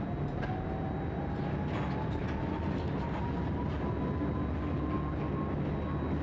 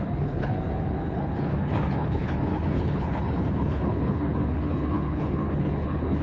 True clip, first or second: first